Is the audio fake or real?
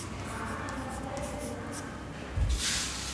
real